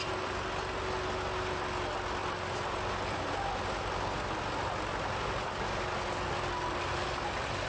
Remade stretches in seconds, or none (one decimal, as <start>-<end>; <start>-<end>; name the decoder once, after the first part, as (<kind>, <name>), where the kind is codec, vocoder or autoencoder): none